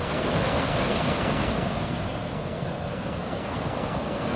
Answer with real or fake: fake